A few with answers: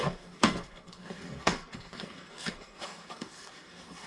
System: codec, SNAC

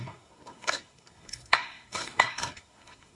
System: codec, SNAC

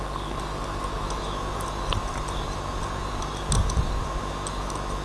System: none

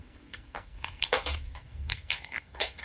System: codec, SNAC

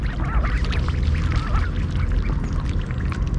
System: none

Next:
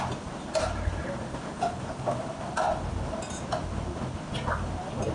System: none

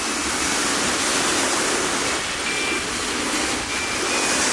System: none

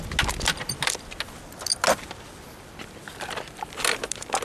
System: none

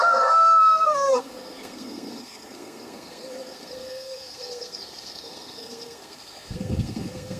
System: codec, SNAC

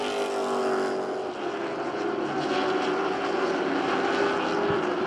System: none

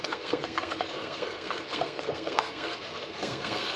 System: codec, SNAC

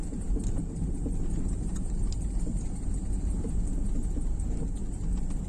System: none